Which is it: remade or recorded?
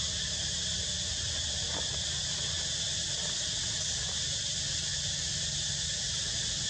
recorded